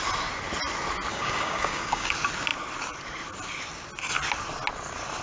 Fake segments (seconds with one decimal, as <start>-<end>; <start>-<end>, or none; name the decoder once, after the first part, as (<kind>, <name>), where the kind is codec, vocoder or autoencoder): 1.1-2.1 (codec, DAC)

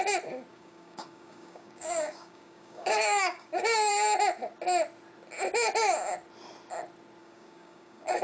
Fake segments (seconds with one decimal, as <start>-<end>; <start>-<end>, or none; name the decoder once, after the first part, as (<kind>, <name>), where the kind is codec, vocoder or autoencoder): 0.5-3.9 (codec, DAC); 7.2-8.2